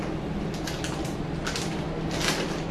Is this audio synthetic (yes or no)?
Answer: no